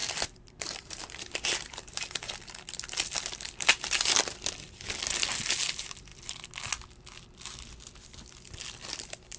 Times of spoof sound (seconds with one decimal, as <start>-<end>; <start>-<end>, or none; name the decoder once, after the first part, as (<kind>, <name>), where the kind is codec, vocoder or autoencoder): 0.0-4.8 (vocoder, BigVGAN v2); 6.1-6.7